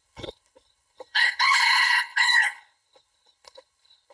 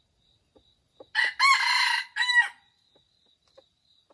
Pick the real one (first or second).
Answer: second